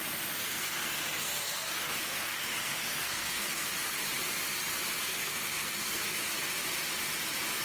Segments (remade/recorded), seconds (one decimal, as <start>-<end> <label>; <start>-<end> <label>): 0.0-0.4 recorded; 0.4-3.7 remade; 3.7-5.1 recorded; 5.1-6.0 remade; 6.0-7.6 recorded